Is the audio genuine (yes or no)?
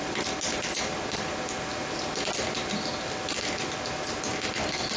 yes